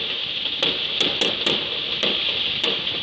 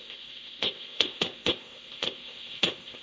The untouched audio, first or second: first